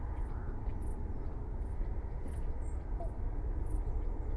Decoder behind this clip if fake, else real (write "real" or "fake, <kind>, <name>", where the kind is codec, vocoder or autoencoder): real